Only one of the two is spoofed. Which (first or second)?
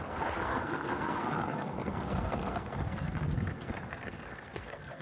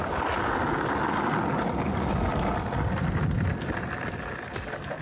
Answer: first